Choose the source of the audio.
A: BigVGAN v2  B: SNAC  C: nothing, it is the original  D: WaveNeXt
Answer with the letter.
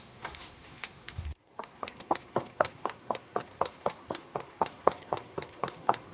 B